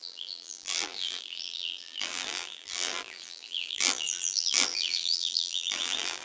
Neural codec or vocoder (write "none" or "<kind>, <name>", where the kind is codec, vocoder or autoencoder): vocoder, BigVGAN v2